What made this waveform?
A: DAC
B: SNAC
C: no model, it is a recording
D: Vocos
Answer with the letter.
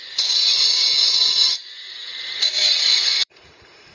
D